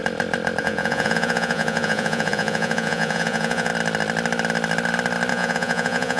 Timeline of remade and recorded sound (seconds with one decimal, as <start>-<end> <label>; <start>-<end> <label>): 0.0-0.6 recorded; 0.6-3.7 remade; 3.7-5.3 recorded; 5.3-6.2 remade